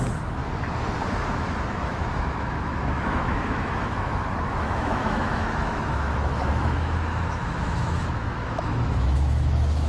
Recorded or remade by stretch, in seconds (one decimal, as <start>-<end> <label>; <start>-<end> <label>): 0.0-0.4 remade; 0.4-1.1 recorded; 1.1-9.9 remade